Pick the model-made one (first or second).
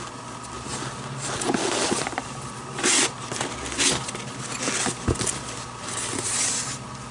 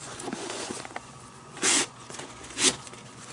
second